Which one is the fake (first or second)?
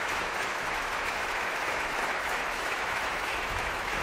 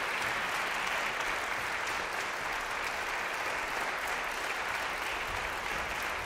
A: first